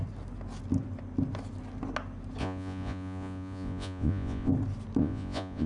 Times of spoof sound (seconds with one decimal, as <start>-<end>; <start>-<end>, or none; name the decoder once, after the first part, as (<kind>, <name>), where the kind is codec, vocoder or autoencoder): 2.4-4.5 (vocoder, Vocos); 5.0-5.7